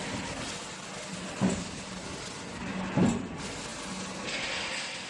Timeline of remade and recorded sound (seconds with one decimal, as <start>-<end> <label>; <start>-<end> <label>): 0.0-5.1 recorded

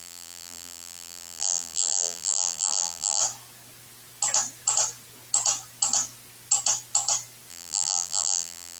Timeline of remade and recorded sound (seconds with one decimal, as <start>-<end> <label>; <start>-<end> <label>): 0.0-3.2 remade; 3.2-7.5 recorded; 7.5-8.8 remade

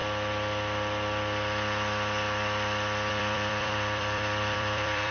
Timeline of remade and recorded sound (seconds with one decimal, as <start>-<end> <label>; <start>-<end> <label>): 0.0-3.1 recorded; 3.1-5.1 remade